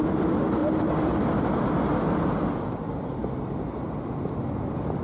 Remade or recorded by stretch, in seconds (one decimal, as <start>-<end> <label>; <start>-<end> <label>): 0.0-0.6 recorded; 0.6-1.9 remade; 1.9-3.2 recorded; 3.2-4.1 remade; 4.1-5.0 recorded